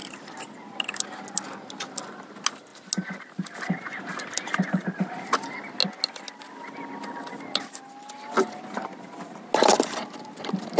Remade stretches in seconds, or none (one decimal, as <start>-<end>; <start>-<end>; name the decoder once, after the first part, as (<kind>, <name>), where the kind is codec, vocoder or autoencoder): none